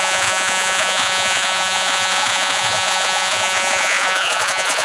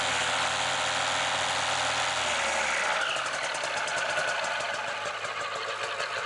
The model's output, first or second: first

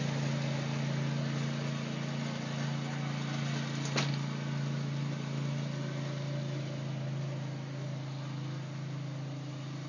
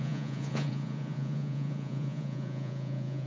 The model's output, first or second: second